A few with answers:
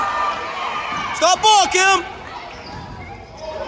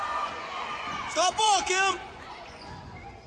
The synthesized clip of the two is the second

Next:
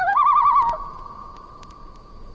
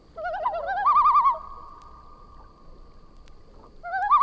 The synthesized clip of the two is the first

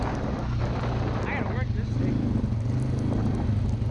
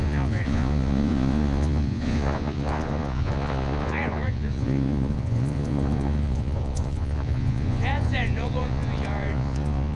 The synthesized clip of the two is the second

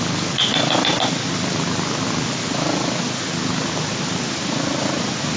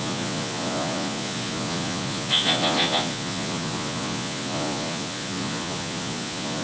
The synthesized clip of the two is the second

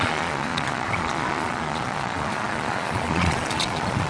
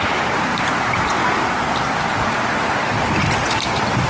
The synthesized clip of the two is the first